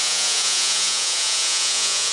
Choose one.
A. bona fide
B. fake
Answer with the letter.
B